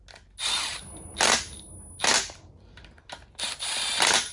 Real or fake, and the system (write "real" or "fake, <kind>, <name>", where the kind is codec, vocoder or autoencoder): real